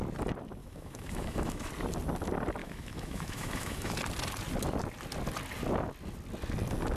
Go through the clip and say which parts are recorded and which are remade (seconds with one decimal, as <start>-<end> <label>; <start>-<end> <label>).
0.0-0.6 recorded; 0.6-1.7 remade; 1.7-2.6 recorded; 2.6-4.0 remade; 4.0-7.0 recorded